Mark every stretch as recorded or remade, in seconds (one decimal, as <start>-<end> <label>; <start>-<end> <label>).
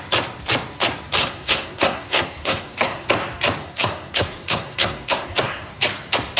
0.0-1.2 recorded; 1.2-3.1 remade; 3.1-3.6 recorded; 3.6-5.7 remade; 5.7-6.4 recorded